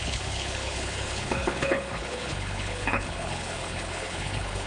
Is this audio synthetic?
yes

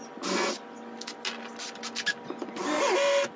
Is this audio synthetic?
no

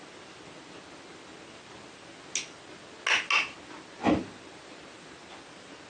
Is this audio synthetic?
no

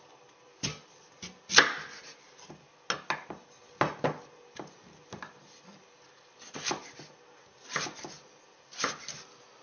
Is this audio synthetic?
no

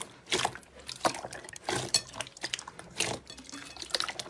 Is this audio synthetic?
no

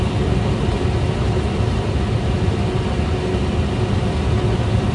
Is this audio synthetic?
no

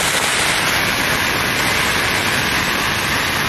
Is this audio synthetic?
no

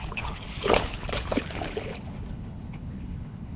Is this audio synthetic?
yes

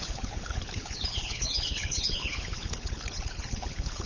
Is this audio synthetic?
yes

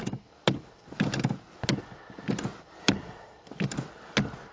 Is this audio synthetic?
no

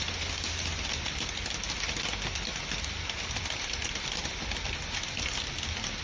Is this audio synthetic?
no